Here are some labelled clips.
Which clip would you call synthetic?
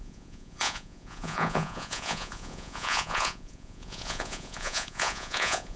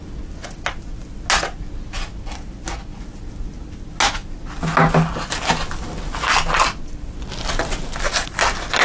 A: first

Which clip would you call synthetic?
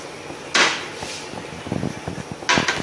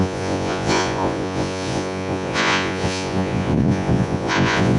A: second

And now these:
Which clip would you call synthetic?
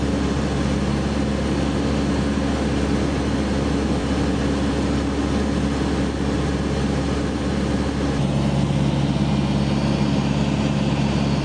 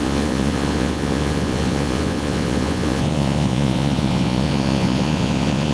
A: second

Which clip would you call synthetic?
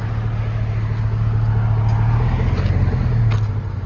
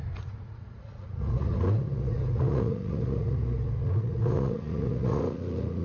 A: second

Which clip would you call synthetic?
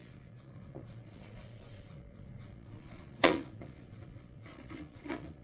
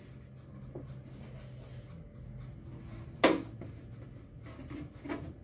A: first